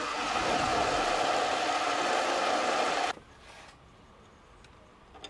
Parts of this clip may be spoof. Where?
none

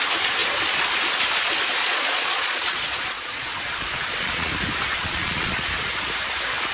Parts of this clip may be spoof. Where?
1.8-4.5 (vocoder, Vocos); 4.9-5.7

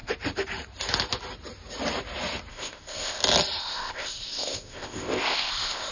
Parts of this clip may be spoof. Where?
2.5-3.2 (codec, ZipCodec); 3.6-5.9

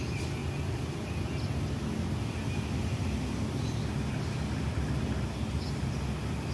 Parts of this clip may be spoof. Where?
none

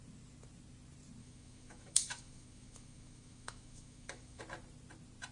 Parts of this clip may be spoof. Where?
1.2-4.4 (autoencoder, DAC-VAE)